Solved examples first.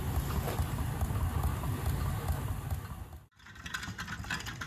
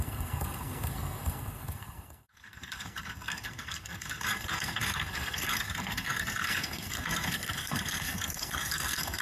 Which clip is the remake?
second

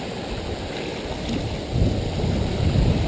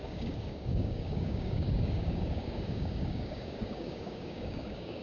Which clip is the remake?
second